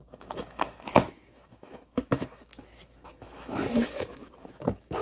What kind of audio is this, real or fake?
fake